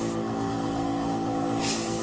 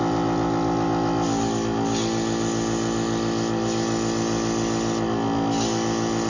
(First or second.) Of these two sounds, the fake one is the first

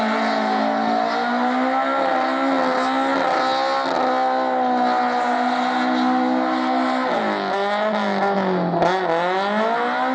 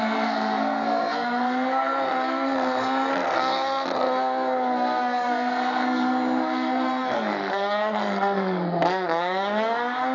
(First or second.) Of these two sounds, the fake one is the second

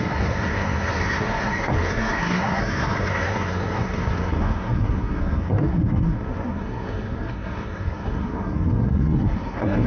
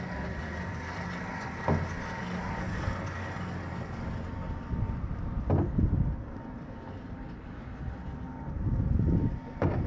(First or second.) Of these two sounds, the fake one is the first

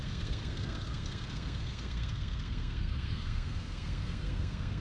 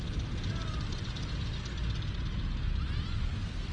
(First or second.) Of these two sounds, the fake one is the first